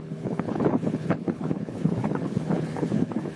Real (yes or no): no